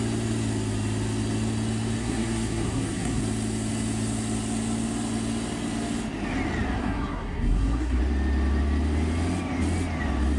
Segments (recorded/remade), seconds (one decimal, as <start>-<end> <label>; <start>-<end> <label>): 0.0-2.0 recorded; 2.0-3.2 remade; 3.2-6.8 recorded; 6.8-8.0 remade; 8.0-10.4 recorded